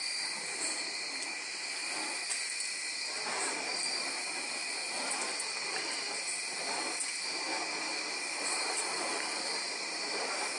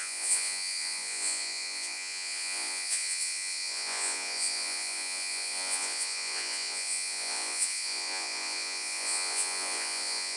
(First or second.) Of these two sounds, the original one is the first